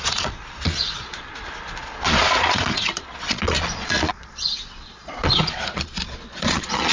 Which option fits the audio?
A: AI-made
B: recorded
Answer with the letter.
A